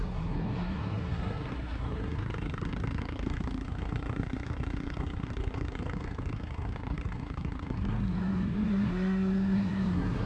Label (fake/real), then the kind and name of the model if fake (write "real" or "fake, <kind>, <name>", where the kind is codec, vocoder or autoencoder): fake, codec, SNAC